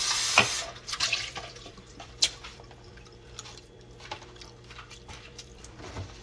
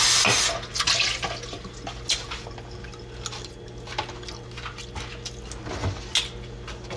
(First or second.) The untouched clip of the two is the second